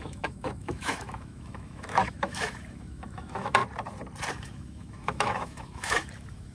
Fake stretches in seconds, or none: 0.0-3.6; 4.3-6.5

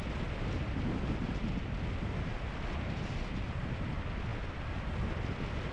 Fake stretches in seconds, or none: none